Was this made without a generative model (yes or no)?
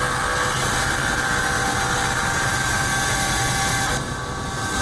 yes